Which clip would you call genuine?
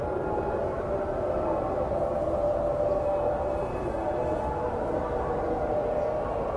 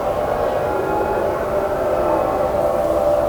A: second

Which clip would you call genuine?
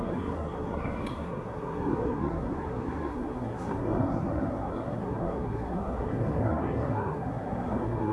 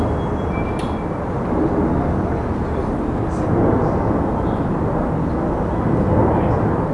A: second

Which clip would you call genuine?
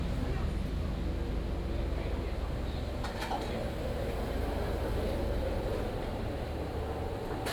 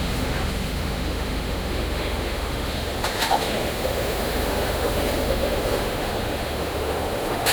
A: first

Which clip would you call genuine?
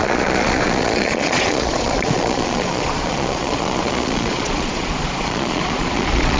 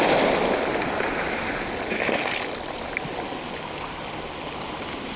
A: second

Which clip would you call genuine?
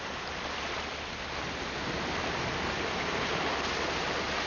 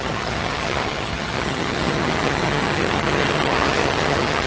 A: first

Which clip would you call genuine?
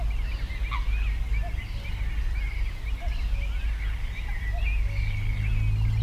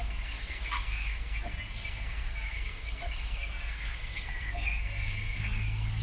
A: first